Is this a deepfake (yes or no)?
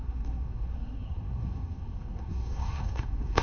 yes